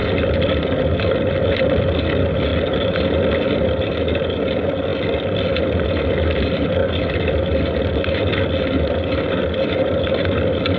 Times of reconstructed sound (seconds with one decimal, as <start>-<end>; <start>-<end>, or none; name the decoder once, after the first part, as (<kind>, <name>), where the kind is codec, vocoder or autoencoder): none